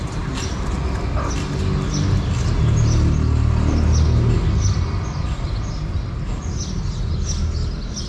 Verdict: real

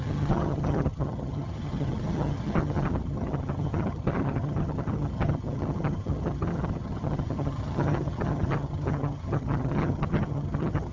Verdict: fake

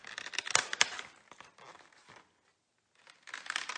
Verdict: real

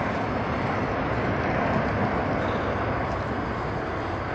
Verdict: real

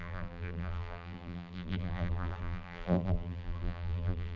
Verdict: fake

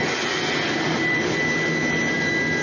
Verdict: real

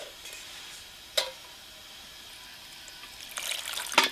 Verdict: real